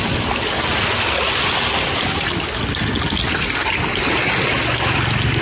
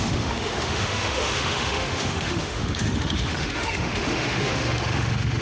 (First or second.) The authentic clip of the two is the first